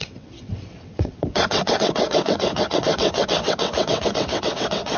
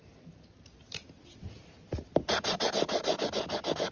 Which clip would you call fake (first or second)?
first